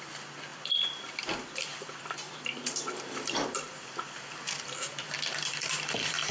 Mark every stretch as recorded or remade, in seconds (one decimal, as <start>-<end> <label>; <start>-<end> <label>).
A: 0.0-6.3 remade